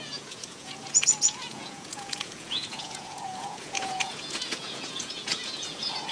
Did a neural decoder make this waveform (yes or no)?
yes